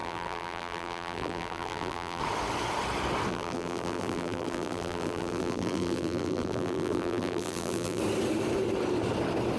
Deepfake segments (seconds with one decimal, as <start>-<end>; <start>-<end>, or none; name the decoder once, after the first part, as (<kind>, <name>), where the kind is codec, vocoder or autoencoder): 0.0-2.2 (vocoder, BigVGAN v2); 3.3-8.0